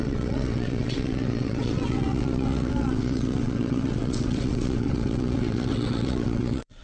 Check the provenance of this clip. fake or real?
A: fake